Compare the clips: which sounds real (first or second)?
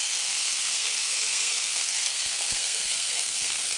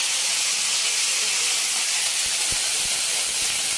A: second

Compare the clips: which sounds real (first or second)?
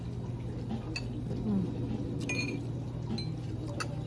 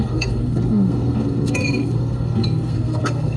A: first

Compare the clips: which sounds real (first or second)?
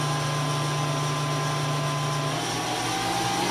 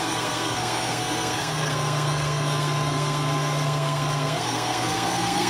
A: first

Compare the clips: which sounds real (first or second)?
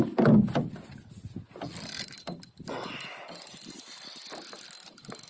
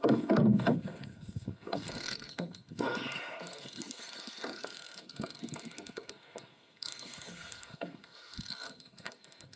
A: first